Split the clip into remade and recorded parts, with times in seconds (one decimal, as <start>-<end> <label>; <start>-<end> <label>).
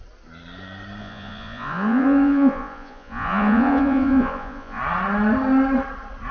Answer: 0.0-1.0 recorded; 1.0-4.8 remade; 4.8-6.3 recorded